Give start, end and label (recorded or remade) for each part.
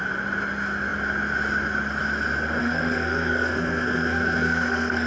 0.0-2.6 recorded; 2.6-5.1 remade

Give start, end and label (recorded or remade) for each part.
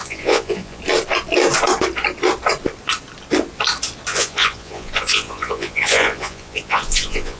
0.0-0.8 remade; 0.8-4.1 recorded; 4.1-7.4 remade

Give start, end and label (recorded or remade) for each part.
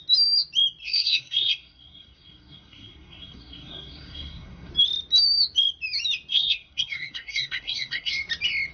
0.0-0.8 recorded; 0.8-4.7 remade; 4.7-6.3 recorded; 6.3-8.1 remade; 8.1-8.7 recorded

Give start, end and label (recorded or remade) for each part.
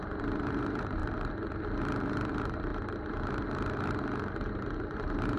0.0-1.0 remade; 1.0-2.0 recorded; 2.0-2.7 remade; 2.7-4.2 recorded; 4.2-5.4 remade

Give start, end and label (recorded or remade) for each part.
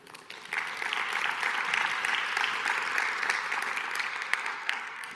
0.0-4.1 recorded; 4.1-5.2 remade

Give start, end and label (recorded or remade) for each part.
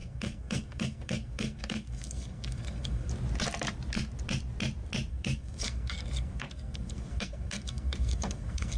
0.0-3.1 remade; 3.1-5.1 recorded; 5.1-8.8 remade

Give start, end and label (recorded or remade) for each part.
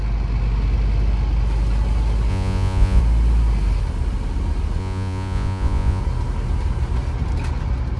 0.0-2.3 recorded; 2.3-3.0 remade; 3.0-4.8 recorded; 4.8-6.0 remade; 6.0-8.0 recorded